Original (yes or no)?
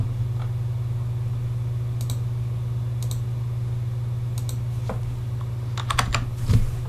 yes